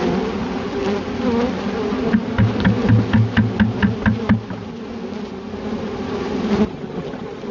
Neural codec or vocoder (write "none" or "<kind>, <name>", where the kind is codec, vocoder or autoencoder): none